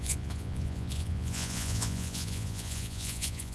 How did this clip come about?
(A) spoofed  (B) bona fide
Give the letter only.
A